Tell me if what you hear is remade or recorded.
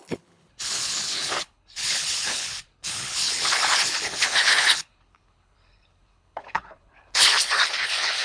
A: remade